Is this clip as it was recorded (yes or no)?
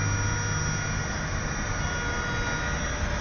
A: yes